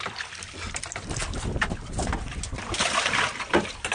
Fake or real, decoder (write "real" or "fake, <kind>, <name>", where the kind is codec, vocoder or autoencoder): real